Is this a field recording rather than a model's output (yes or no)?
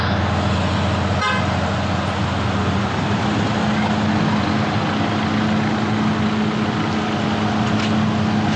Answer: yes